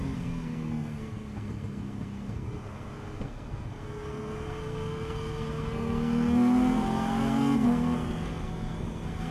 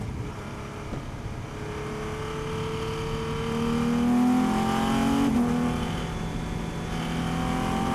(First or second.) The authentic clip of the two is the second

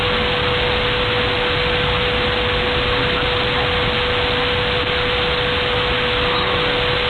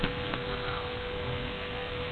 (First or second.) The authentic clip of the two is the first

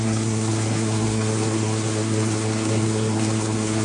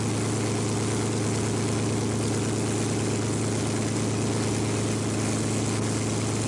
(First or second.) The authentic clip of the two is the second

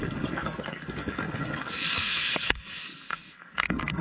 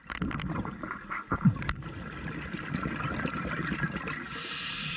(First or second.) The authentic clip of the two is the second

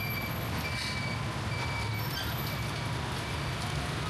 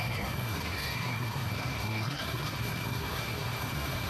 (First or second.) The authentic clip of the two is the first